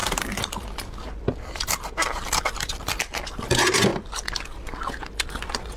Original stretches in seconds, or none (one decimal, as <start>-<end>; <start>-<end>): 3.5-3.9; 4.7-5.8